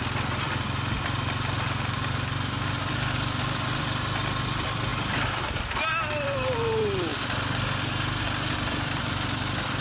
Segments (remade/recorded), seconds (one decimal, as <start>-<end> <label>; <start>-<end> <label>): 0.0-7.1 remade; 7.1-8.2 recorded; 8.2-9.0 remade; 9.0-9.8 recorded